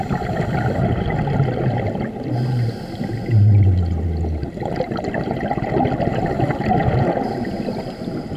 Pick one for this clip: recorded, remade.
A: recorded